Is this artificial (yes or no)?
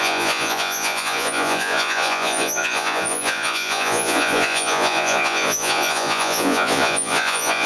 yes